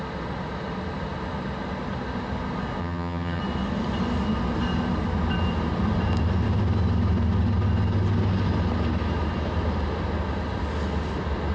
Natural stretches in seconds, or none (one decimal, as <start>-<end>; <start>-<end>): 0.0-2.8; 3.4-11.5